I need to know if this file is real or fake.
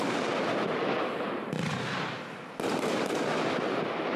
real